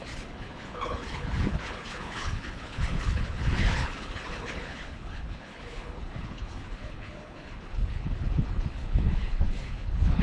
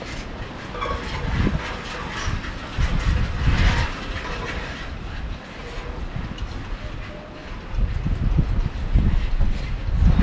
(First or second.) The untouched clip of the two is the second